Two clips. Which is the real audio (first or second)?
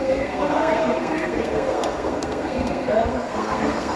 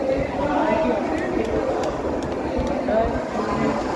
second